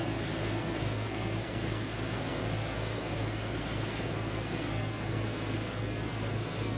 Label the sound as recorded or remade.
remade